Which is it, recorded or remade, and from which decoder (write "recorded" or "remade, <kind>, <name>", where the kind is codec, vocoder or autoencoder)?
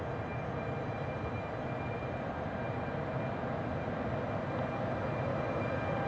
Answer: recorded